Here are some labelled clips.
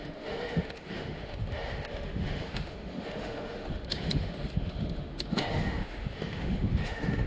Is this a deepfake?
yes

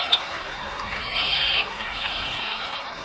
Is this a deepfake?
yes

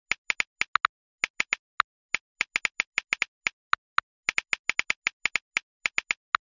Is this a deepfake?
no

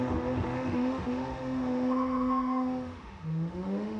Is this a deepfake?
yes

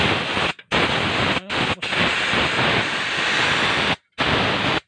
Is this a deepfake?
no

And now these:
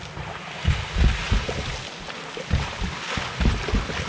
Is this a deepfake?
no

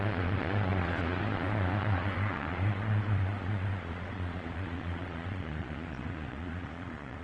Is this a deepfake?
yes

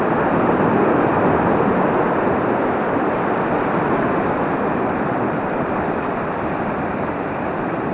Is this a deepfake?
yes